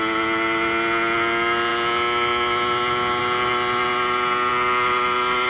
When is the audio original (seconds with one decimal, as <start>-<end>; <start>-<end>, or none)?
0.0-5.5